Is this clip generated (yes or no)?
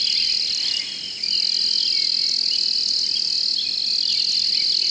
no